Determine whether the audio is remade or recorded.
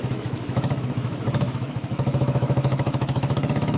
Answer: remade